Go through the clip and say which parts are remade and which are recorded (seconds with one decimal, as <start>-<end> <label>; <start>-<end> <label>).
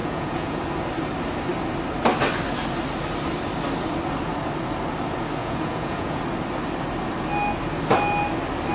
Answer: 0.0-0.6 remade; 0.6-5.4 recorded; 5.4-6.2 remade; 6.2-8.7 recorded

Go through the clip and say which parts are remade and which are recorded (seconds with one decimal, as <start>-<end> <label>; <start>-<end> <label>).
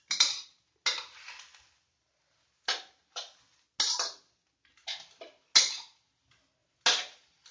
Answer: 0.0-7.5 recorded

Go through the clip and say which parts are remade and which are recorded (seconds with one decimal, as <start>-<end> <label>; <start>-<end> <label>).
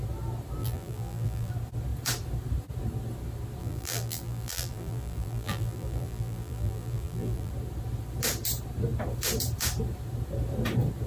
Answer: 0.0-0.6 recorded; 0.6-1.5 remade; 1.5-3.6 recorded; 3.6-7.5 remade; 7.5-11.1 recorded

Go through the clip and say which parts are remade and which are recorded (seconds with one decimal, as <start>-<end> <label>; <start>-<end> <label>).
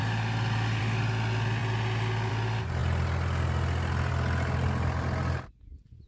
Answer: 0.0-6.1 recorded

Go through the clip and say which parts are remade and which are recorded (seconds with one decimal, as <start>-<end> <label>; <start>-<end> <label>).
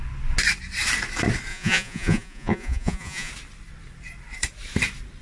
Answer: 0.0-1.5 recorded; 1.5-3.3 remade; 3.3-5.2 recorded